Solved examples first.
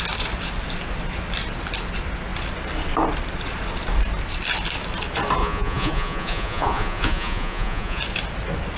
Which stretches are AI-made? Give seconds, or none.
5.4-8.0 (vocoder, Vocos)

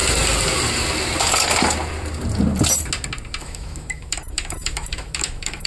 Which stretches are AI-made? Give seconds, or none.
3.4-5.7 (autoencoder, DAC-VAE)